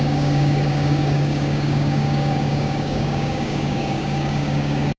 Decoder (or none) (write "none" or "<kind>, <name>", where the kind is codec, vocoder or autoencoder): codec, DAC